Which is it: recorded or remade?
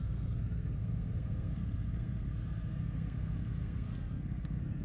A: remade